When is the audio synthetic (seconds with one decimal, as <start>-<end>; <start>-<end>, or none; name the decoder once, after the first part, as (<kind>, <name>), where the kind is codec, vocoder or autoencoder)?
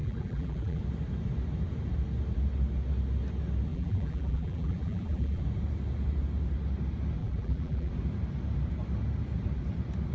0.0-0.8 (vocoder, BigVGAN v2); 3.7-5.4; 7.2-7.9